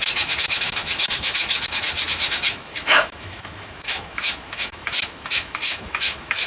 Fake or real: fake